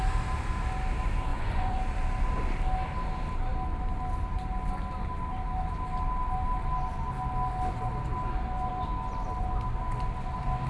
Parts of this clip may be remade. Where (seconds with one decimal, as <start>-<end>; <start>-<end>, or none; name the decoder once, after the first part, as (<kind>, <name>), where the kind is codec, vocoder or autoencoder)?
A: 1.3-1.8 (vocoder, Vocos)